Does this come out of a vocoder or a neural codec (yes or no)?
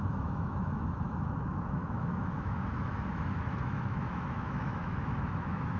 yes